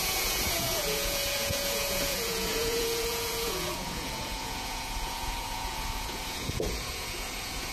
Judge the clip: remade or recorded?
remade